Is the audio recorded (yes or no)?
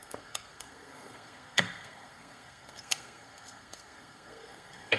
no